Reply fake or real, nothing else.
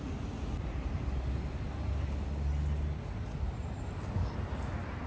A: real